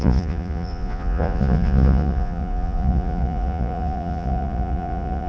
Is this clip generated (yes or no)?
yes